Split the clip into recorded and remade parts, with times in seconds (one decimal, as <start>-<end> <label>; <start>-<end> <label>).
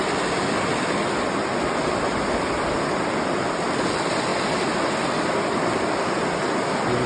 0.0-7.1 recorded